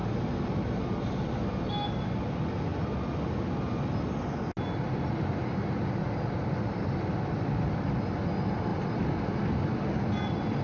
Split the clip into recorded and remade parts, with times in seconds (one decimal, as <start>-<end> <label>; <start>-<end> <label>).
0.0-10.6 recorded

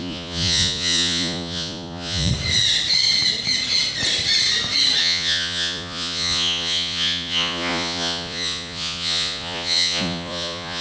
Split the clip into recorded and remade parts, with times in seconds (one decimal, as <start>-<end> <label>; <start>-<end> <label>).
0.0-2.3 remade; 2.3-5.0 recorded; 5.0-10.8 remade

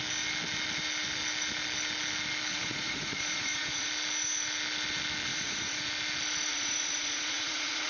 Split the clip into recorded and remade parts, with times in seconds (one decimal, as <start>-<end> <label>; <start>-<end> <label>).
0.0-2.5 recorded; 2.5-3.9 remade; 3.9-5.3 recorded; 5.3-5.9 remade; 5.9-6.5 recorded; 6.5-7.9 remade